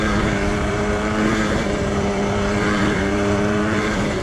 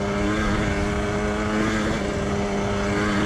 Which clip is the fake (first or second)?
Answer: first